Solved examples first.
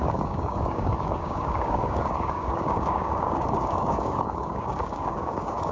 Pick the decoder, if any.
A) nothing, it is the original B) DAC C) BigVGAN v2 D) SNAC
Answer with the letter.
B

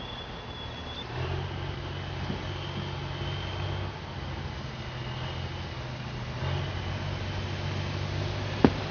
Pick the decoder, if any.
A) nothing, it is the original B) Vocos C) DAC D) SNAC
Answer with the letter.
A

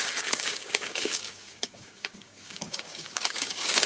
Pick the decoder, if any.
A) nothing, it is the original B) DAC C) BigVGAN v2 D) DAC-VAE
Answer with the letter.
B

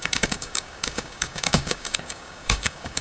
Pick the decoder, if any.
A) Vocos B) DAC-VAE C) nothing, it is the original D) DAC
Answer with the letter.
D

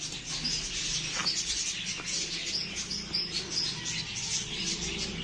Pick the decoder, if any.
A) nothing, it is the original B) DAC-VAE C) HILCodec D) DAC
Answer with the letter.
A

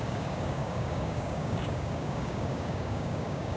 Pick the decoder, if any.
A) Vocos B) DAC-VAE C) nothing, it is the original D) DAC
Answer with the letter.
D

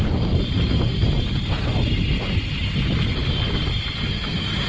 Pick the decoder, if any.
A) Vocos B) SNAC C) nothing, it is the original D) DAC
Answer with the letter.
C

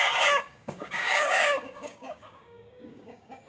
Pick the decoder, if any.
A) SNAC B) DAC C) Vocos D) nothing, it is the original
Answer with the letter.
B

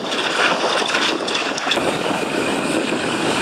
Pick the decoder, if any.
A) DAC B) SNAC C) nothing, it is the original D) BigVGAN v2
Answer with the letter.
A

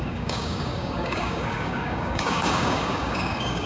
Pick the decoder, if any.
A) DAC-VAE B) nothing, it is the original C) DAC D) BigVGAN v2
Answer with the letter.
C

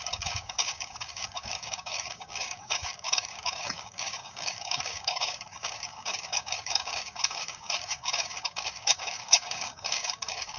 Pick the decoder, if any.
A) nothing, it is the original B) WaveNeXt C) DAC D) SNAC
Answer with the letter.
C